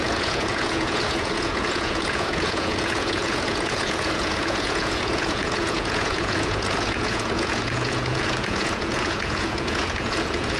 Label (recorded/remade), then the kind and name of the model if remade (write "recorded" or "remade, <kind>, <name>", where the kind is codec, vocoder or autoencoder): remade, vocoder, Vocos